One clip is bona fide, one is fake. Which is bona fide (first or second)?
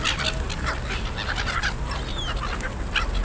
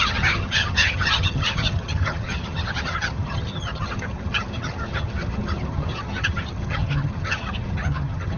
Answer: first